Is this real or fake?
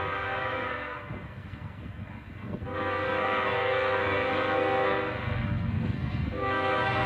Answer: fake